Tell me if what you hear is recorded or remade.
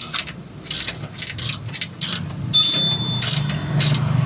recorded